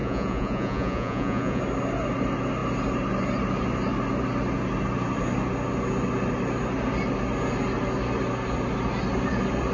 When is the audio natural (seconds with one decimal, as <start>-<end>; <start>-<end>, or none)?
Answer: 1.6-9.7